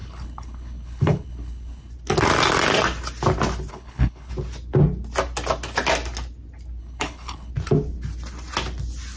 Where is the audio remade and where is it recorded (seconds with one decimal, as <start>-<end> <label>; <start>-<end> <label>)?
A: 0.0-1.9 remade; 1.9-3.7 recorded; 3.7-4.3 remade; 4.3-6.8 recorded; 6.8-7.5 remade; 7.5-9.2 recorded